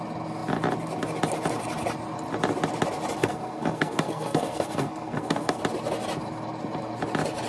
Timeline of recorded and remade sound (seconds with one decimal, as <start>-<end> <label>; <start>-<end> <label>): 0.0-3.2 recorded; 3.2-5.6 remade; 5.6-7.5 recorded